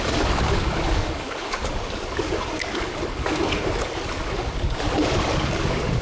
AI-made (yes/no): yes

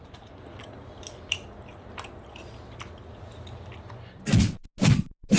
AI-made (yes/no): no